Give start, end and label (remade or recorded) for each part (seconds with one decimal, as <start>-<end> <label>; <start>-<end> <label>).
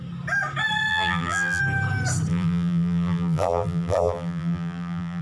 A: 0.0-0.9 recorded; 0.9-1.6 remade; 1.6-2.3 recorded; 2.3-5.2 remade